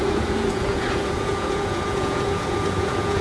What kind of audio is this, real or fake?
fake